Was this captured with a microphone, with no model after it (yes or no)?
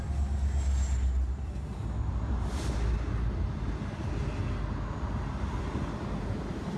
yes